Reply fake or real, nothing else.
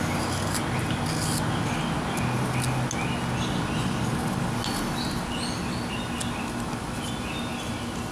real